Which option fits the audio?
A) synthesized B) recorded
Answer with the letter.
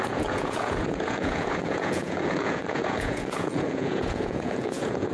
A